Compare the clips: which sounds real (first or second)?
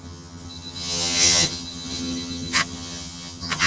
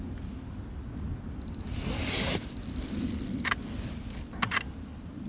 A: second